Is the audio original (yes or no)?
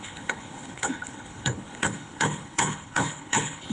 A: no